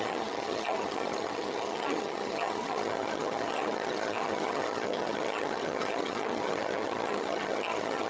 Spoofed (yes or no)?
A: yes